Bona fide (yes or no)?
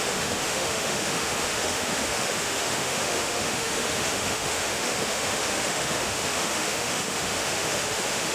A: no